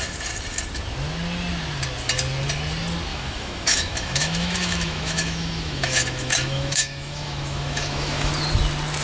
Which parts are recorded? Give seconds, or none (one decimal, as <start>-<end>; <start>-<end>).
0.0-3.1; 8.3-9.0